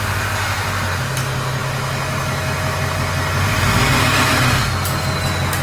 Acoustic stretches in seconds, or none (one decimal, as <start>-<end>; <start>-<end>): 0.0-5.6